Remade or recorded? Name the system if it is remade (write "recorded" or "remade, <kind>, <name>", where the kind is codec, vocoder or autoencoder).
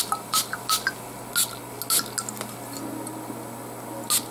recorded